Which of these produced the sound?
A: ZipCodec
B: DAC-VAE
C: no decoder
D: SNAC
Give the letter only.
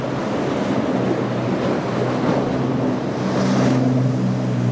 C